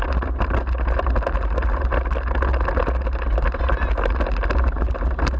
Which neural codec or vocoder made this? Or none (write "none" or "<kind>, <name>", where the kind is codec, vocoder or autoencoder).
none